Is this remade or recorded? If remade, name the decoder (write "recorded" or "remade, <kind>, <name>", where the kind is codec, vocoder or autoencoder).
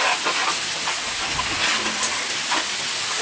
recorded